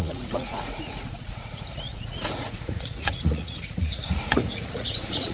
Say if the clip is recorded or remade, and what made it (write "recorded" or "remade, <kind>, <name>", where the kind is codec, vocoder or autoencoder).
remade, vocoder, Vocos